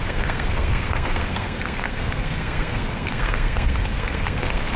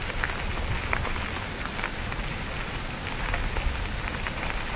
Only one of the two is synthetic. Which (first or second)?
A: first